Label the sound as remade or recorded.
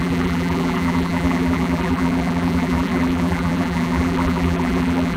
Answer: remade